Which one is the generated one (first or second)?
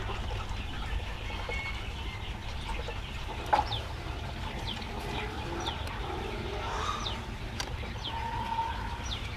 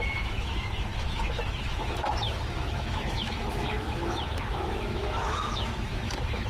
second